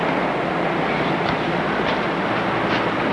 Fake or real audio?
real